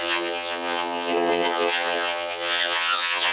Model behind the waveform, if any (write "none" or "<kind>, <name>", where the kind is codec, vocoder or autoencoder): vocoder, HiFi-GAN